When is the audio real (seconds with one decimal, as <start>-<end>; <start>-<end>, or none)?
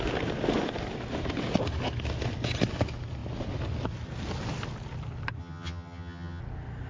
0.0-5.4; 6.4-6.9